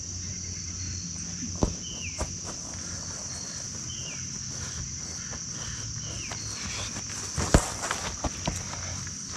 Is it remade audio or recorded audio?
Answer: recorded